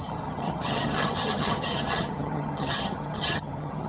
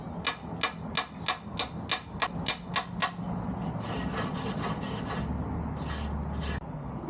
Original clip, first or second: second